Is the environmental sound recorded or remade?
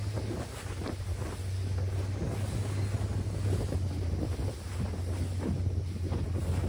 recorded